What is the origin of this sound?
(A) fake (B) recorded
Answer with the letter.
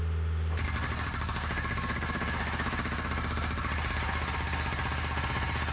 B